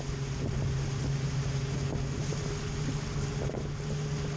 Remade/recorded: recorded